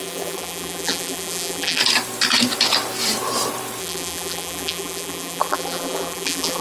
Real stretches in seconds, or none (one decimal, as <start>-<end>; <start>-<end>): 1.8-3.8

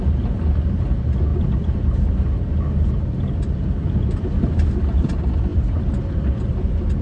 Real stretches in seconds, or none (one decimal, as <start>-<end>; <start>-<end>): 0.0-7.0

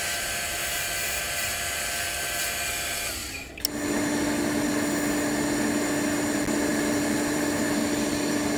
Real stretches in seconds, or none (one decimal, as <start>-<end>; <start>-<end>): 0.0-0.6; 1.5-6.7; 7.6-8.6